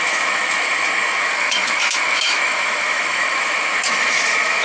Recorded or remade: remade